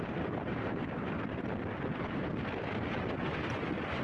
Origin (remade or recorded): recorded